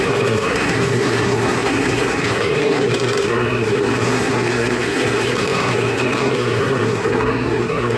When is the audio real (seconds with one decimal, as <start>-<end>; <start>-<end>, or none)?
none